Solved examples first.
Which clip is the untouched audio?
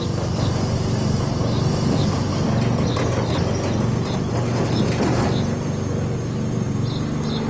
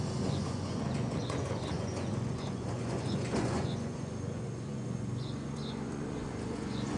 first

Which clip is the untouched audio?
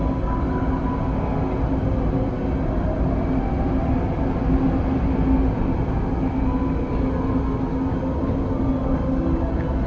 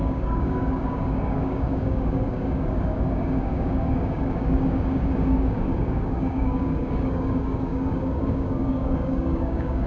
first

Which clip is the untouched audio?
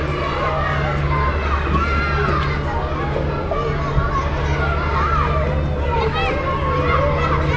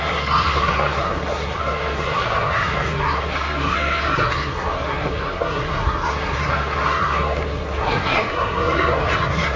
first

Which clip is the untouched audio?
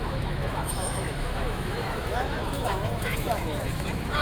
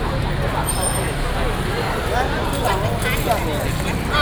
second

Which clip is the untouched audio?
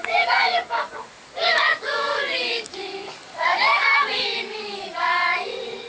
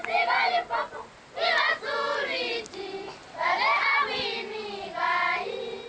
second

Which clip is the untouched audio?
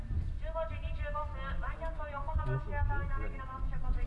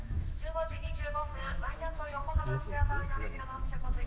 first